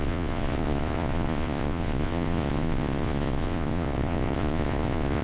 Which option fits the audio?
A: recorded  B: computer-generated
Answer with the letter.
B